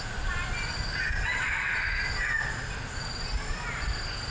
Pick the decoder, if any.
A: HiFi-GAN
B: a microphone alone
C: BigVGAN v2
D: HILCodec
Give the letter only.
B